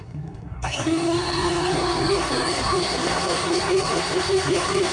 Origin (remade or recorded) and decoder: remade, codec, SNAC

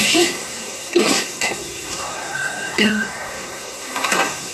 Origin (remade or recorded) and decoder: remade, codec, SNAC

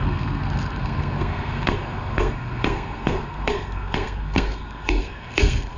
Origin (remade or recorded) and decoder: remade, codec, SNAC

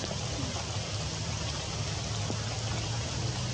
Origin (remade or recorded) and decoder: recorded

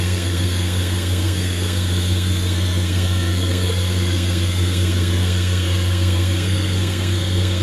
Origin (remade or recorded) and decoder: remade, codec, SNAC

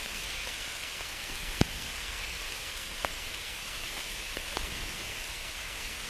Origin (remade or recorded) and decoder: remade, codec, SNAC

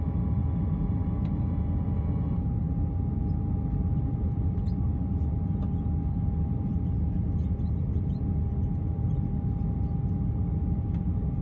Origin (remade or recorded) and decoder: recorded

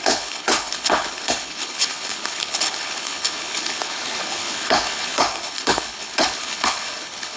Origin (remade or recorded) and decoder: remade, codec, HILCodec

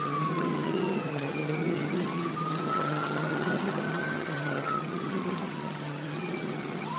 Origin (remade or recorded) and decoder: remade, vocoder, HiFi-GAN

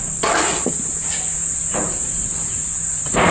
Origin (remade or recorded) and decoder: recorded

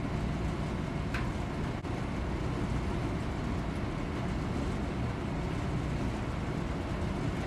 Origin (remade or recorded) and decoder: recorded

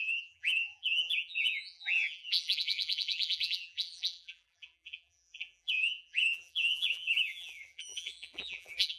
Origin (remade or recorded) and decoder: remade, vocoder, BigVGAN v2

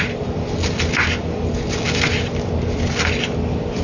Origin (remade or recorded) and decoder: recorded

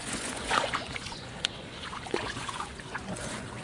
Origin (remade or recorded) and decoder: remade, vocoder, Vocos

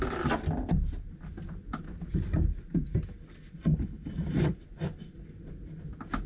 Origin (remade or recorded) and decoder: recorded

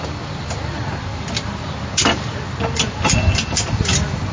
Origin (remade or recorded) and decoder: recorded